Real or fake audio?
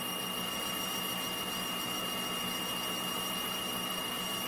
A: real